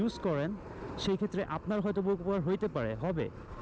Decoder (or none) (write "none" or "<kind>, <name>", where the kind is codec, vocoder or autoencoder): none